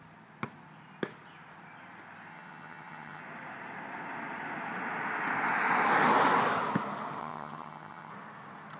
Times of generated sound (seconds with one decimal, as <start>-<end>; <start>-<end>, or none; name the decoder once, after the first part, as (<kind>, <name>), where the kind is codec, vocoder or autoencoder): 2.3-3.2 (vocoder, HiFi-GAN); 7.2-8.1